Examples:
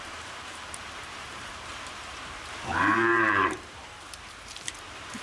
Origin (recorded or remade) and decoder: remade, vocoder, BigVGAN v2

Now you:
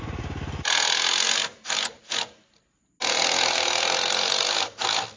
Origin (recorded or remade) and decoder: recorded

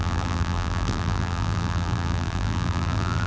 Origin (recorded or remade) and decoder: remade, vocoder, BigVGAN v2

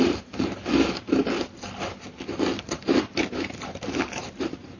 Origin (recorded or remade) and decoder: recorded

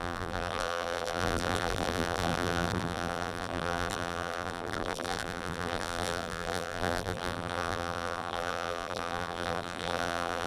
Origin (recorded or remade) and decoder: remade, vocoder, BigVGAN v2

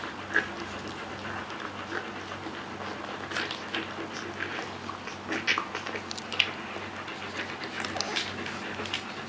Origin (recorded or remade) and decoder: recorded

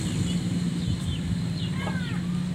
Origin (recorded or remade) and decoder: recorded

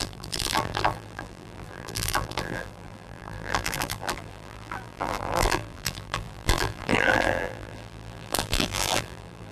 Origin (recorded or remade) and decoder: remade, vocoder, BigVGAN v2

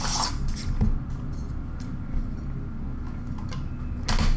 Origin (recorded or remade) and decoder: recorded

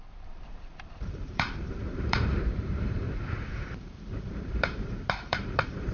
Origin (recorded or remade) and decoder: remade, vocoder, BigVGAN v2